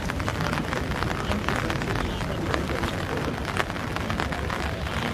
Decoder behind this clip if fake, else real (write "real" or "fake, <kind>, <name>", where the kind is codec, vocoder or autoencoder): real